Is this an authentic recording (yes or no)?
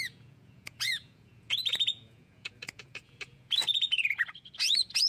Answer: no